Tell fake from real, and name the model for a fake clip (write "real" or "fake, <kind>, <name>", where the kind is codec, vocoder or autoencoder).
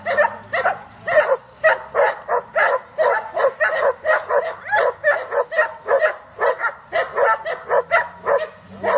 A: real